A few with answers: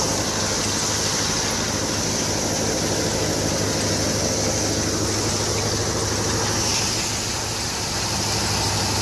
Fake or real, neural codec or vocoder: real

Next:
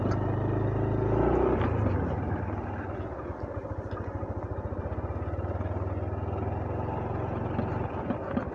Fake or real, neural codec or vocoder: real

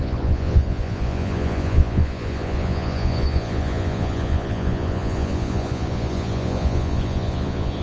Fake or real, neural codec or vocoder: fake, vocoder, Vocos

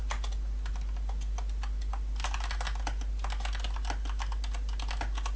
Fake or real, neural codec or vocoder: real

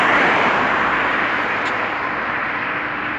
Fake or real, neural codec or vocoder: real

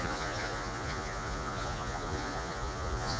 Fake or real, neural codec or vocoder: fake, vocoder, Vocos